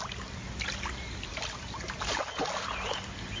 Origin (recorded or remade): recorded